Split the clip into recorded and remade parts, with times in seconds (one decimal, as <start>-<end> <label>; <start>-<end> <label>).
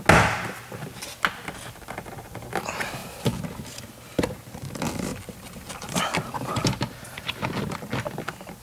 0.0-5.1 recorded; 5.1-6.0 remade; 6.0-8.6 recorded